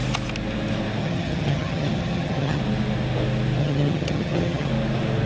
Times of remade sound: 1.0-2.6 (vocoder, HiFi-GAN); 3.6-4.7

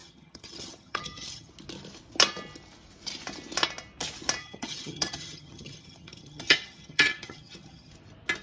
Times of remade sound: 0.0-1.5 (vocoder, HiFi-GAN); 4.4-7.9

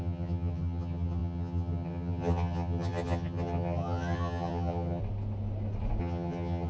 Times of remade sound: 0.0-5.0 (vocoder, HiFi-GAN); 6.0-6.7

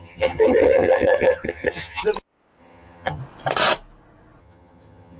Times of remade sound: 0.0-2.0 (vocoder, HiFi-GAN); 2.6-3.2; 4.4-5.2